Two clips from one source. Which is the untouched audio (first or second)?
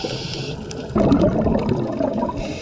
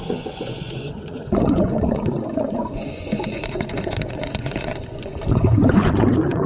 first